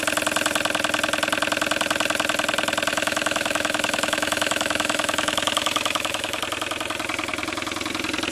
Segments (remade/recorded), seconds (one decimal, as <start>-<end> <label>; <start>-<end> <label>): 0.0-2.9 recorded; 2.9-6.4 remade; 6.4-8.3 recorded